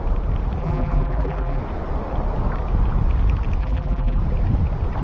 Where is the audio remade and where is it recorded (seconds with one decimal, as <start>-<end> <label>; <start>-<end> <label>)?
0.0-0.6 recorded; 0.6-1.6 remade; 1.6-3.6 recorded; 3.6-4.2 remade; 4.2-5.0 recorded